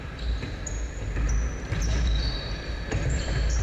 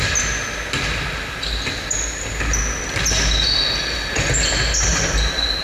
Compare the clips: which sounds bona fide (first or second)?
second